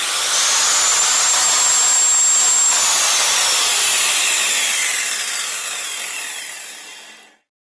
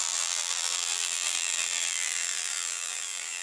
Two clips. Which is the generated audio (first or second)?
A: second